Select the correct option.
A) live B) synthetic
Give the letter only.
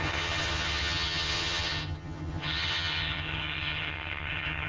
B